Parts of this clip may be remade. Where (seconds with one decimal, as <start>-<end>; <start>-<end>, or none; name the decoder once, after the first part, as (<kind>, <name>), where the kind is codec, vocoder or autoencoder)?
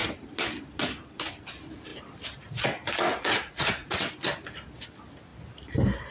3.1-4.1 (vocoder, Vocos)